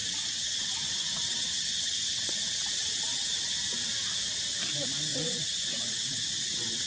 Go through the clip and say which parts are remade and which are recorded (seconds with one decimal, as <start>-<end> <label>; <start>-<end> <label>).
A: 0.0-3.5 remade; 3.5-5.1 recorded; 5.1-6.9 remade